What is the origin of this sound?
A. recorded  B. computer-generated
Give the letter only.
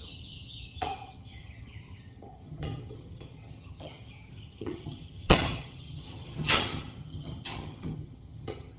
B